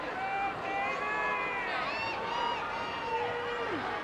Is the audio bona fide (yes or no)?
yes